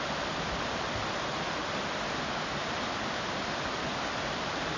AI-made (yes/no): no